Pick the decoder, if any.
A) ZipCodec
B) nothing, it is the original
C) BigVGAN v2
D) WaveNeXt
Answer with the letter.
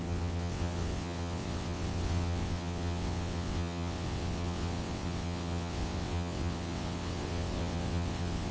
D